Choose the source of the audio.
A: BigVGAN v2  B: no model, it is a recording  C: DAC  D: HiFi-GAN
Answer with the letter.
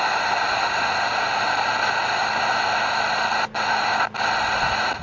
B